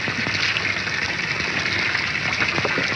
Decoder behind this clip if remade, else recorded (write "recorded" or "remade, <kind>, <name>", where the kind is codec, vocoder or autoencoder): recorded